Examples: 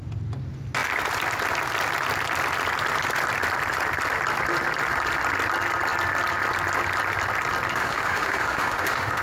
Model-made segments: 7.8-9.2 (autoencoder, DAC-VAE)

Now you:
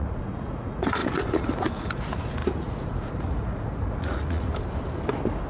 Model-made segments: 0.0-4.5 (vocoder, Vocos)

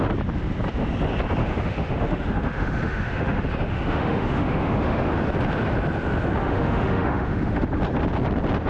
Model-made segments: 1.4-5.1 (autoencoder, DAC-VAE); 6.4-7.7

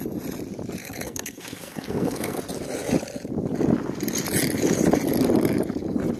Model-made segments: 0.8-2.4 (codec, SNAC)

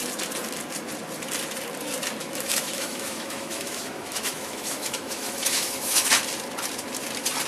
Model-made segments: 2.2-6.1 (autoencoder, DAC-VAE)

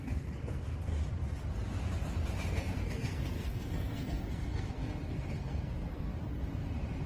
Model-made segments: 0.0-0.9 (codec, SNAC); 2.5-6.1

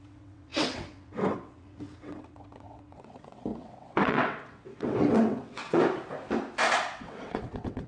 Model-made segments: 0.0-5.8 (vocoder, WaveNeXt); 6.9-7.9